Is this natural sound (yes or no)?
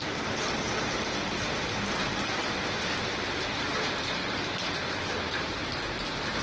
yes